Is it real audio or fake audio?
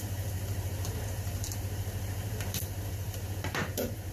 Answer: fake